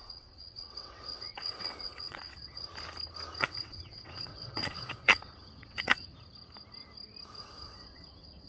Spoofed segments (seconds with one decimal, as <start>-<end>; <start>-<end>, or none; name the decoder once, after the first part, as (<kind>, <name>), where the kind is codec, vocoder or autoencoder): 0.0-2.7 (vocoder, WaveNeXt); 3.4-6.1; 7.4-8.5